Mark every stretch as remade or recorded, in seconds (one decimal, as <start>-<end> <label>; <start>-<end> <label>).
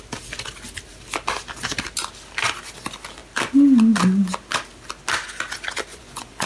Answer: 0.0-5.9 recorded; 5.9-6.5 remade